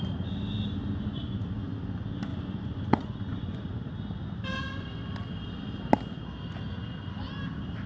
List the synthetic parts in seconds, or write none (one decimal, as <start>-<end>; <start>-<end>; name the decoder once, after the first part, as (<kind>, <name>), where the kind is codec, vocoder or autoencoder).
0.8-1.7 (vocoder, Vocos); 2.3-3.9